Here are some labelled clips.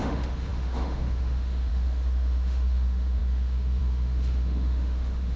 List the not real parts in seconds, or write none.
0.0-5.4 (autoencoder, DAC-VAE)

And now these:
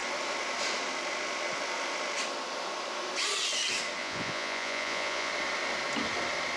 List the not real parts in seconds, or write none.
4.0-5.3 (vocoder, Vocos)

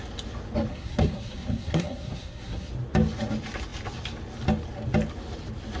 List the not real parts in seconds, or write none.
0.7-2.7 (codec, SNAC)

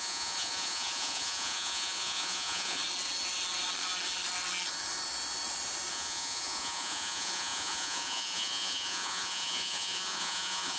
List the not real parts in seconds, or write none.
0.0-2.8 (vocoder, Vocos); 5.9-10.8

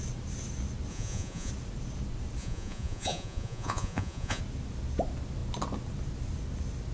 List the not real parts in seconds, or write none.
0.9-1.5 (vocoder, Vocos); 2.4-4.4